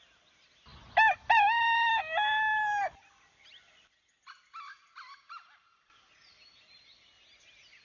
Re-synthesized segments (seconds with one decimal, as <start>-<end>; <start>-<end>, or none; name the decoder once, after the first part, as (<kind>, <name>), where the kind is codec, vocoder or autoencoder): none